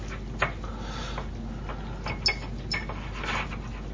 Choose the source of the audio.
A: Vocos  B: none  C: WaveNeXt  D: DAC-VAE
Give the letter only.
B